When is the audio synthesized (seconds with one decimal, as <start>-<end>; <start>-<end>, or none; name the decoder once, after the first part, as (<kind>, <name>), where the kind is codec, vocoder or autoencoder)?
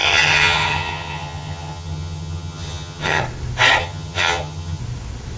0.0-3.2 (vocoder, HiFi-GAN); 3.8-4.8